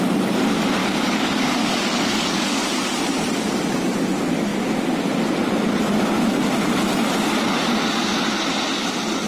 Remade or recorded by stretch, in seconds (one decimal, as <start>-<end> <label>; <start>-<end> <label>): 0.0-0.8 recorded; 0.8-2.6 remade; 2.6-9.3 recorded